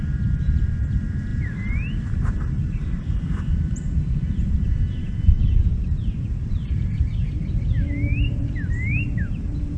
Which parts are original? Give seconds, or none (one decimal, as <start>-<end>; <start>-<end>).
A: 7.2-8.3